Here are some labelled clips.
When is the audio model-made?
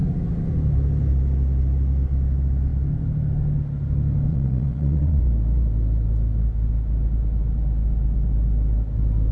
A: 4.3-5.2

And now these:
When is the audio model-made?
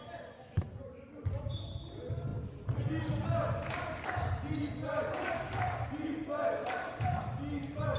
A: none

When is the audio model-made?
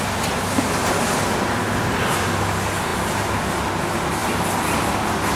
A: none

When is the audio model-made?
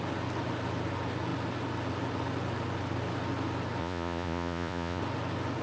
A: 3.8-5.0